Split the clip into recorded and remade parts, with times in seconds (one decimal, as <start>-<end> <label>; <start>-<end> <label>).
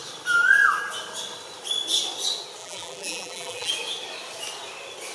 0.0-2.6 recorded; 2.6-3.7 remade; 3.7-5.1 recorded